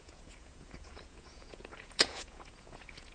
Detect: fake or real fake